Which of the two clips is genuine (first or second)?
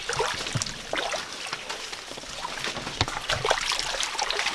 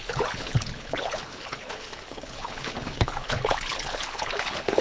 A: first